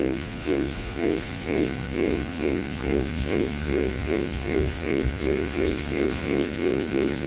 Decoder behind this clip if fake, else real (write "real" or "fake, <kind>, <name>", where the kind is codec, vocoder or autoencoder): fake, vocoder, Vocos